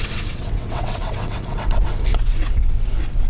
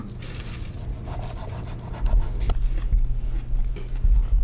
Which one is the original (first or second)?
second